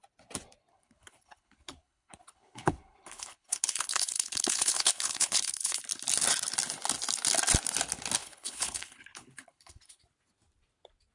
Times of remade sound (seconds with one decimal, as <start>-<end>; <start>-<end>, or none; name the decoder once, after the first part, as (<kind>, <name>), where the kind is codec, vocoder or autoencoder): 0.7-5.8 (codec, HILCodec); 8.2-10.0